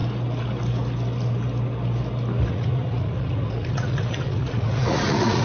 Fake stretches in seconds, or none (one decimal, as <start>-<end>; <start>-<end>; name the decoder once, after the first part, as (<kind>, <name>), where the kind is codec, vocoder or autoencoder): 2.4-5.4 (vocoder, Vocos)